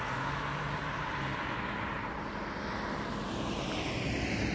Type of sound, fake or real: real